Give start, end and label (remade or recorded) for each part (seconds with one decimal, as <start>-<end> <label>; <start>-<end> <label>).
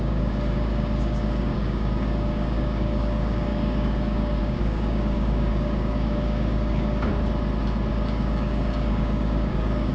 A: 0.0-7.1 remade; 7.1-7.9 recorded; 7.9-9.9 remade